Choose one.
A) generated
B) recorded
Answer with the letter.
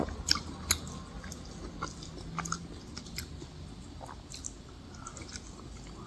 B